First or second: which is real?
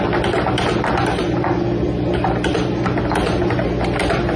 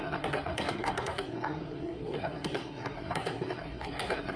first